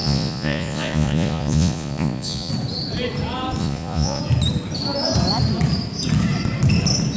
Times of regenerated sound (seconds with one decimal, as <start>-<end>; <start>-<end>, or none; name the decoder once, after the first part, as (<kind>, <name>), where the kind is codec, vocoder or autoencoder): 0.0-2.5 (vocoder, Vocos); 3.6-4.2